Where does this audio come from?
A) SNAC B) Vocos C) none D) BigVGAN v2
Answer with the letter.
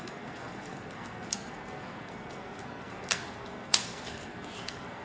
A